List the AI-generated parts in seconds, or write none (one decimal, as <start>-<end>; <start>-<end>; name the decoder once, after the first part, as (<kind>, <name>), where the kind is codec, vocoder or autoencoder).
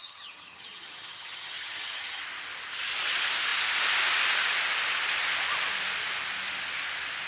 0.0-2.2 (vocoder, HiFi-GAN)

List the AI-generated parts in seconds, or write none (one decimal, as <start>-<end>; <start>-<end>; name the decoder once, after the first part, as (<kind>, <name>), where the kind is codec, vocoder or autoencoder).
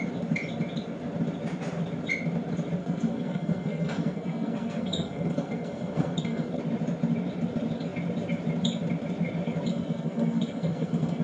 2.8-6.6 (codec, SNAC); 9.7-11.2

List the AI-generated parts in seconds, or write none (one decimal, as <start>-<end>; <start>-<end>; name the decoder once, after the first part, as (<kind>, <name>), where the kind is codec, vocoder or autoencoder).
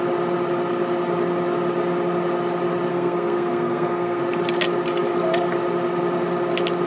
2.9-4.2 (codec, SNAC)